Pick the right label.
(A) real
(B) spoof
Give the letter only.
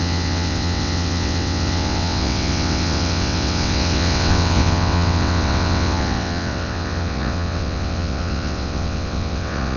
B